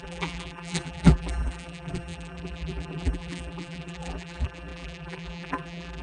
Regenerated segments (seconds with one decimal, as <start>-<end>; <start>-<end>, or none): 0.0-6.0